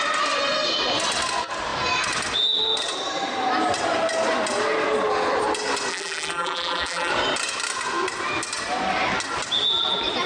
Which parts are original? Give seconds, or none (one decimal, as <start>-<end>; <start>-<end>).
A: 0.0-5.9; 7.1-10.3